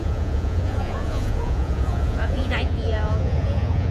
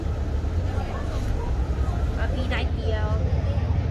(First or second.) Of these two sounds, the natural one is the second